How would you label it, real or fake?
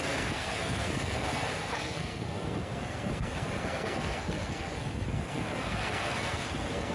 fake